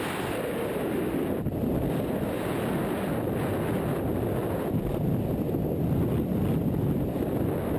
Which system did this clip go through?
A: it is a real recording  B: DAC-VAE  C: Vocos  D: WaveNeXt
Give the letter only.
A